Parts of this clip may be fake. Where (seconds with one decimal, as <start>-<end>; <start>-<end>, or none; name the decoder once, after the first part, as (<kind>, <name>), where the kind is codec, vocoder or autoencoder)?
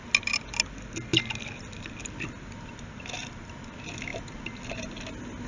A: none